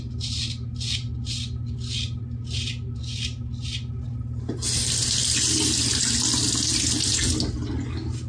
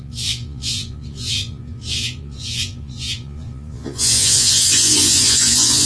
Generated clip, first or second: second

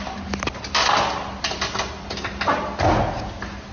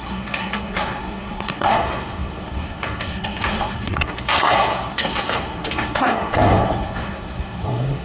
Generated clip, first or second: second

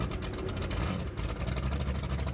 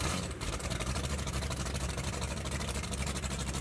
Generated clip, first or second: second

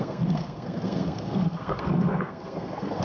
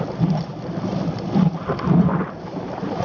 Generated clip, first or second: first